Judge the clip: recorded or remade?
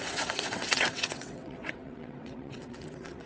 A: remade